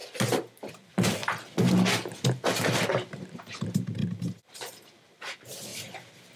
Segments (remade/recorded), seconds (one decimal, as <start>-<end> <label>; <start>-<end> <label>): 0.0-0.7 recorded; 0.7-1.2 remade; 1.2-2.9 recorded; 2.9-4.0 remade; 4.0-4.5 recorded; 4.5-5.7 remade; 5.7-6.4 recorded